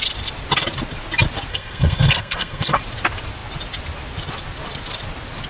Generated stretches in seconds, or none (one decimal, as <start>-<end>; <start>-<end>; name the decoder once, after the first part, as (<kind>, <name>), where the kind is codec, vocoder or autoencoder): 1.5-2.8 (codec, SNAC)